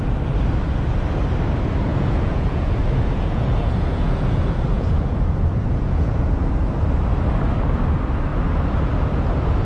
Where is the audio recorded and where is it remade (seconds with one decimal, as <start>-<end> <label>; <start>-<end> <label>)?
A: 0.0-1.9 recorded; 1.9-6.3 remade; 6.3-9.7 recorded